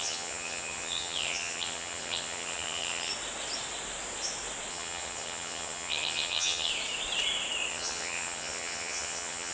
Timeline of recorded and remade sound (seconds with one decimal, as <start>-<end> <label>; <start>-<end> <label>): 0.0-3.1 remade; 3.1-4.7 recorded; 4.7-6.7 remade; 6.7-7.7 recorded; 7.7-9.5 remade